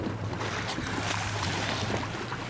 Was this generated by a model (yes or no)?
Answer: no